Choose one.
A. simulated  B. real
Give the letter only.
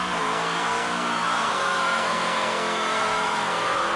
A